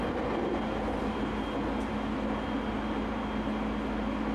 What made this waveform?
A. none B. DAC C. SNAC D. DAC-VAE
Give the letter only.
A